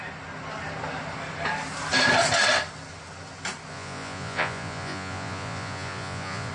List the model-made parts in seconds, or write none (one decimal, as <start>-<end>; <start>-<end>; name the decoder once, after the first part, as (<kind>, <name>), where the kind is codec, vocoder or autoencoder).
3.7-6.5 (vocoder, Vocos)